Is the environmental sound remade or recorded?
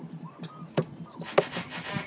recorded